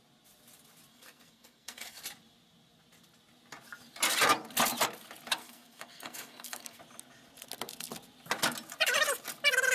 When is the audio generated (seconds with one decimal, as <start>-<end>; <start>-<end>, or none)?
0.9-2.0; 5.4-6.8